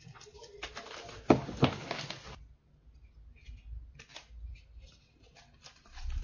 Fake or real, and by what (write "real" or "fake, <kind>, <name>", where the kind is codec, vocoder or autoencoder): real